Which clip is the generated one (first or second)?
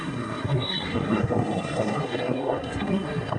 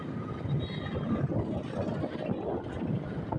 first